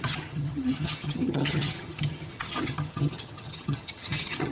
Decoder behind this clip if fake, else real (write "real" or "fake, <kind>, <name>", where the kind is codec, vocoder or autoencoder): fake, vocoder, HiFi-GAN